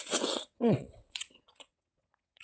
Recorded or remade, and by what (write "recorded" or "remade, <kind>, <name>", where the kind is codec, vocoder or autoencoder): remade, vocoder, WaveNeXt